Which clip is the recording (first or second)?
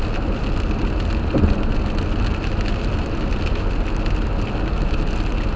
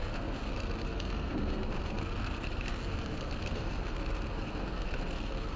first